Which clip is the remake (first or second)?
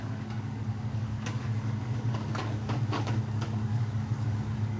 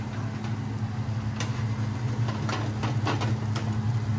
first